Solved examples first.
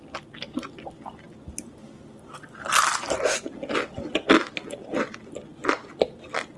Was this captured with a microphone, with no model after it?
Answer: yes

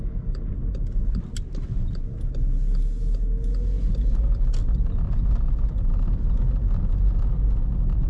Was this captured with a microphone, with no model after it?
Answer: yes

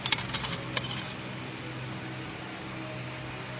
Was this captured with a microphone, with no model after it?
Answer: yes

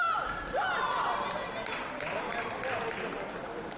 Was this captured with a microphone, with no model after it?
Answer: yes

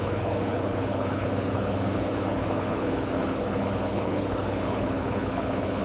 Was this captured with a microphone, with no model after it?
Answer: no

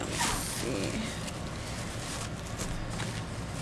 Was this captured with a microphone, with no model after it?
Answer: yes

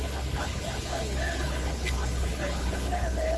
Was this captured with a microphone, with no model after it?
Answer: no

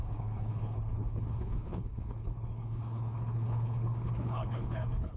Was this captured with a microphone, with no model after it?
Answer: no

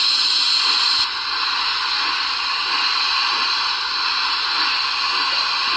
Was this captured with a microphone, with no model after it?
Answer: yes